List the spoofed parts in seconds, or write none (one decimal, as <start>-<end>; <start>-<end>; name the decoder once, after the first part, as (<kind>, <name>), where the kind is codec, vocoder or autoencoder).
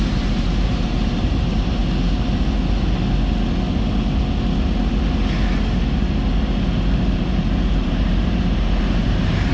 0.0-1.8 (vocoder, BigVGAN v2); 6.6-9.5